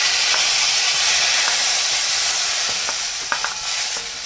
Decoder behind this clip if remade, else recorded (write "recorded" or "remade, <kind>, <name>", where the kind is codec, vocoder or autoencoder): recorded